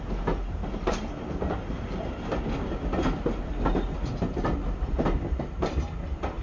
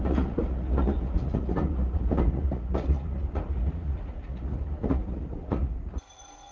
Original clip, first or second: first